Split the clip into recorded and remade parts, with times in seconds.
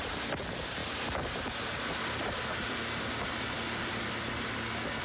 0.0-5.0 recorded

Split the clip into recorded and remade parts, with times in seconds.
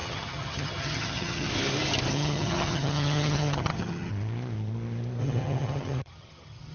0.0-1.5 remade; 1.5-2.1 recorded; 2.1-4.1 remade; 4.1-5.2 recorded; 5.2-6.7 remade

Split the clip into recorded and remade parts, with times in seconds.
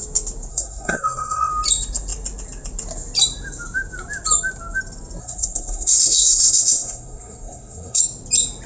0.0-0.5 recorded; 0.5-1.5 remade; 1.5-5.2 recorded; 5.2-8.0 remade; 8.0-8.7 recorded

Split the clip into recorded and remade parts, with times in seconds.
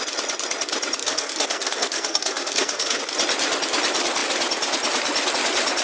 0.0-1.0 recorded; 1.0-3.0 remade; 3.0-5.8 recorded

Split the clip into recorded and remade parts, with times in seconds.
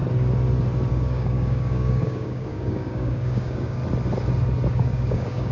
0.0-0.9 recorded; 0.9-3.8 remade; 3.8-4.7 recorded; 4.7-5.5 remade